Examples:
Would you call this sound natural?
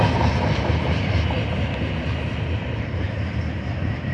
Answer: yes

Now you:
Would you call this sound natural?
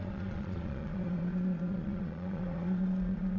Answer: no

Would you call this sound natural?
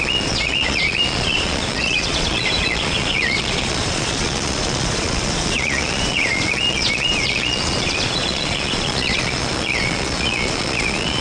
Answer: no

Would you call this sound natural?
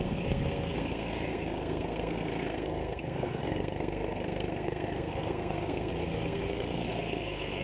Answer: no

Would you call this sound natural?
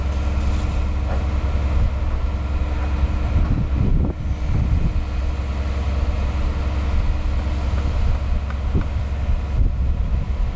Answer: yes